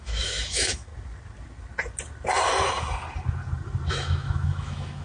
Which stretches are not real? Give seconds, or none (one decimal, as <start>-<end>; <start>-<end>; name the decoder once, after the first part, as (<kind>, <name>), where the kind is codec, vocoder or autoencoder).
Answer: 0.0-0.9 (autoencoder, DAC-VAE); 3.9-5.0